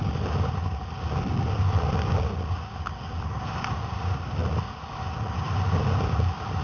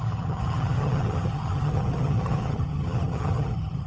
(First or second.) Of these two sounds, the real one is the first